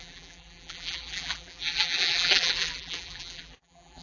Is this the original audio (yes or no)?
no